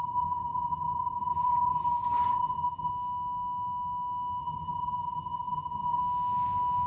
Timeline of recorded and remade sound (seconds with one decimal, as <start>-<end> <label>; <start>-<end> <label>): 0.0-2.9 remade; 2.9-4.4 recorded; 4.4-6.0 remade; 6.0-6.9 recorded